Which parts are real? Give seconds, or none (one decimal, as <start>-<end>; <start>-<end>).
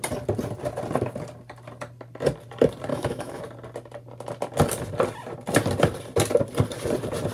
0.0-2.9; 3.4-7.3